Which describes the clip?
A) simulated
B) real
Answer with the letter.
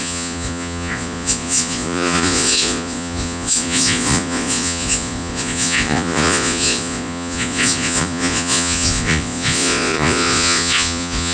A